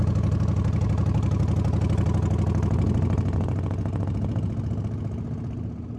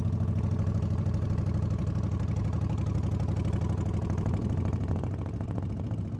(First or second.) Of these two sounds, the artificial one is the second